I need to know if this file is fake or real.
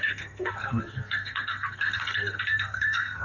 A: fake